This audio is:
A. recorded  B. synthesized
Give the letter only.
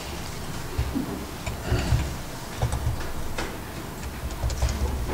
A